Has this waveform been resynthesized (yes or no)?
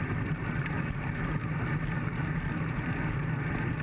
no